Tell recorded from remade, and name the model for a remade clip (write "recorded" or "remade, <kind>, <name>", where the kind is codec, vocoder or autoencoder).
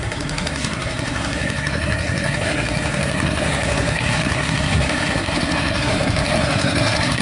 remade, codec, SNAC